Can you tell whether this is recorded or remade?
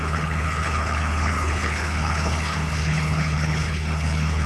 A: remade